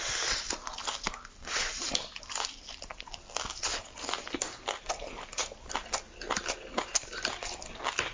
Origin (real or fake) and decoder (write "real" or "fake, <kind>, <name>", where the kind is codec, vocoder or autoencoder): real